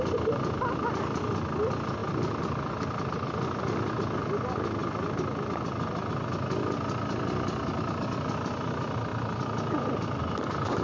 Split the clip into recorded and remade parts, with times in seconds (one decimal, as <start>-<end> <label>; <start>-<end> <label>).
0.0-2.0 recorded; 2.0-3.6 remade; 3.6-10.8 recorded